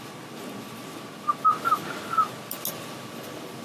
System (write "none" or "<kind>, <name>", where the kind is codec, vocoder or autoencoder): none